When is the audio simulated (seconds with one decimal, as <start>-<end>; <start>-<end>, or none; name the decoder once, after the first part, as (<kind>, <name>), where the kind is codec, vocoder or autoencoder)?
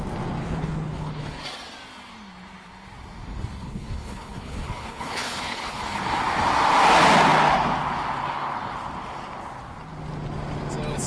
0.4-1.4 (codec, HILCodec); 3.6-6.0